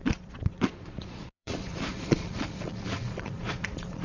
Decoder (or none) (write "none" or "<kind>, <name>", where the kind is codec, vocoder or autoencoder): vocoder, Vocos